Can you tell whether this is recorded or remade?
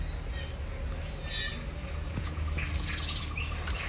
recorded